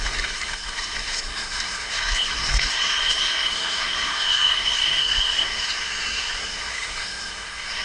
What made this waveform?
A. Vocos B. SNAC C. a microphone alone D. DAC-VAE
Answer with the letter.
B